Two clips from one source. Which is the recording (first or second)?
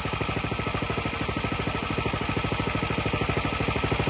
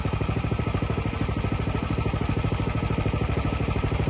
first